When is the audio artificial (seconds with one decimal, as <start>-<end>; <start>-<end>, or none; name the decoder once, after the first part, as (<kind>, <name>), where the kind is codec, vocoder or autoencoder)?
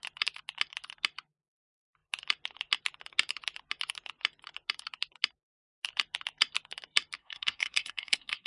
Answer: 7.2-8.5 (codec, SNAC)